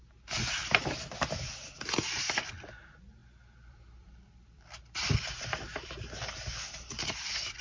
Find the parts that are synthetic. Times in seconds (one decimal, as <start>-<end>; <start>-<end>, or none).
3.2-7.0